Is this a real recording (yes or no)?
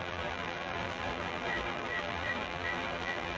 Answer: no